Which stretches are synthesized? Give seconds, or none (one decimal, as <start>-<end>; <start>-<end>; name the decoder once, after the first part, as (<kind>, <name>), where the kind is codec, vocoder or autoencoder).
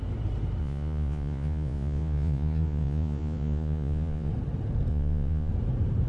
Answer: 0.6-4.3 (vocoder, Vocos); 4.9-5.5